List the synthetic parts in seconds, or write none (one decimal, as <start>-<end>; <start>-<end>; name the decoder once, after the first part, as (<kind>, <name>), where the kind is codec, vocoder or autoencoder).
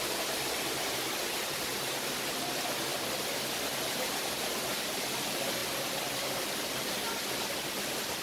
0.0-2.9 (vocoder, BigVGAN v2); 3.8-5.6; 6.6-7.0; 7.7-8.2